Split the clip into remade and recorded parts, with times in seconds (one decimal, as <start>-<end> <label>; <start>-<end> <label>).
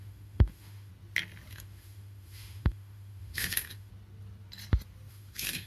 0.0-0.9 remade; 0.9-1.5 recorded; 1.5-3.9 remade; 3.9-5.1 recorded; 5.1-5.7 remade